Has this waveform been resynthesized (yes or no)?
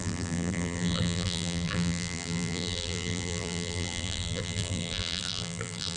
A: yes